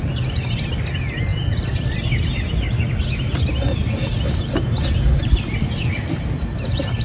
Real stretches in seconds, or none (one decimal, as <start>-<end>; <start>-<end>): 0.0-7.0